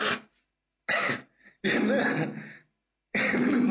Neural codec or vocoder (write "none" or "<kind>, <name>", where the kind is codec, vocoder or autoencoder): none